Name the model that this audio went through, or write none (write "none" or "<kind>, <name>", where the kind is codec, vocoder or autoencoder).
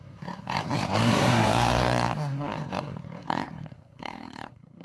codec, SNAC